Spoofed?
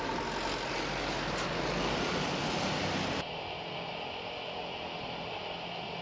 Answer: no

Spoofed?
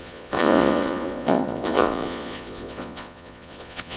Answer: yes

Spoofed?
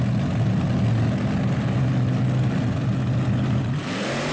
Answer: no